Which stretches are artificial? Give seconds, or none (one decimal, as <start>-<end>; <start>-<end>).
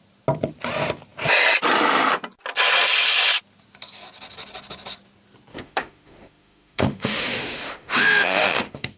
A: 5.5-9.0